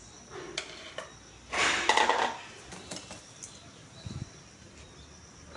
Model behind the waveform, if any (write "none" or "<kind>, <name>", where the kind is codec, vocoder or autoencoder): none